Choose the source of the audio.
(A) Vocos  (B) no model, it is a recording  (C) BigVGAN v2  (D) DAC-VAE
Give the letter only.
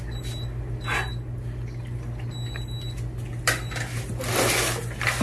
B